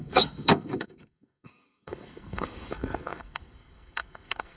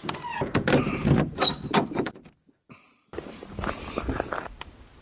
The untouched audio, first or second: second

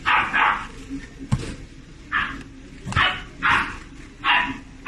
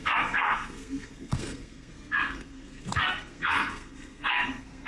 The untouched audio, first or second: first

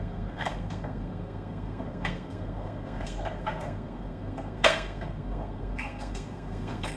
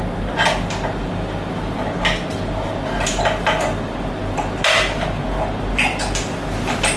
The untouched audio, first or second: second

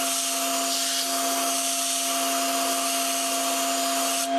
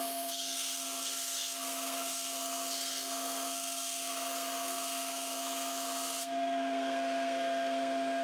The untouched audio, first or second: first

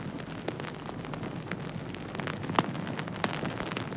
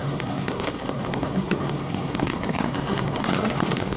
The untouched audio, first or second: first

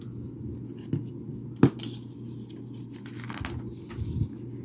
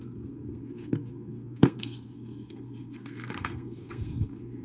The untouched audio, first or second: first